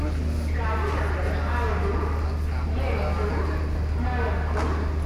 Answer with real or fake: real